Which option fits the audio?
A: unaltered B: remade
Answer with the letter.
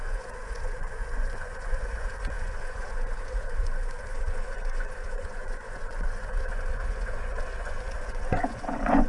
B